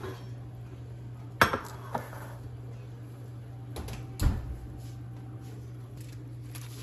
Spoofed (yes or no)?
no